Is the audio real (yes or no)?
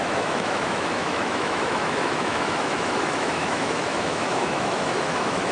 no